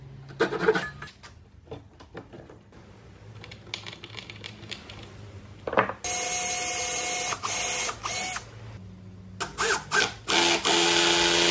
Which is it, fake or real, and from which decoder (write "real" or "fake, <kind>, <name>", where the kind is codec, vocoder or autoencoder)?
real